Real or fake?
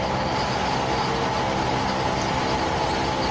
real